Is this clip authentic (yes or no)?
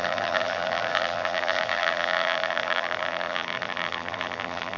no